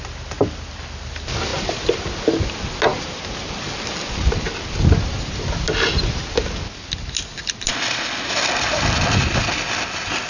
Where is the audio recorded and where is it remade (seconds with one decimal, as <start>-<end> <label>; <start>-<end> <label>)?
0.0-10.3 recorded